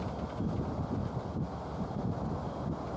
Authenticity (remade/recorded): recorded